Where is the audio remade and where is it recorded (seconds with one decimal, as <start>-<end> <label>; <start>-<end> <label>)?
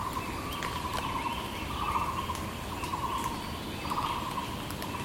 0.0-5.0 recorded